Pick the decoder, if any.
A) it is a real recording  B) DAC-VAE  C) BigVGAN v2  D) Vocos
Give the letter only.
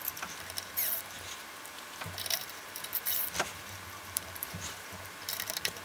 C